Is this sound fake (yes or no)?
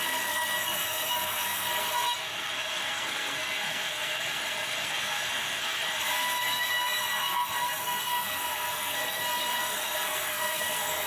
yes